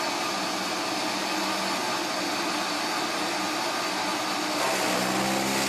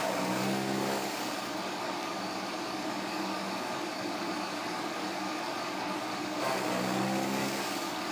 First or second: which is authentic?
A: first